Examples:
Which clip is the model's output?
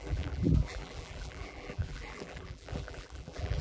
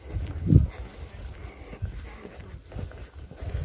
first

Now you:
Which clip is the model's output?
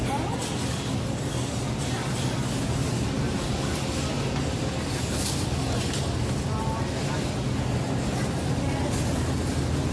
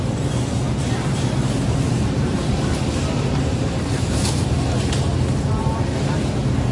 second